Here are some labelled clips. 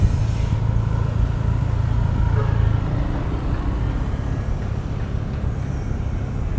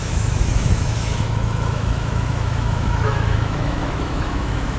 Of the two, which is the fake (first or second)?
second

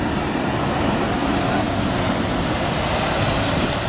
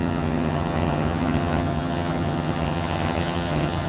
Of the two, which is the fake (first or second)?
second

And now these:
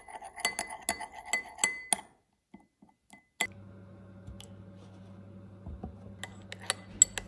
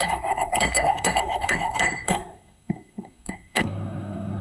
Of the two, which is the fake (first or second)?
second